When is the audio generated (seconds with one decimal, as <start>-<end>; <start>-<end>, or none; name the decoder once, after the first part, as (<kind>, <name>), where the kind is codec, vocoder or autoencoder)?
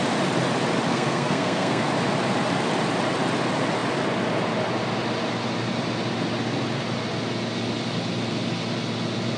0.9-1.8 (codec, SNAC)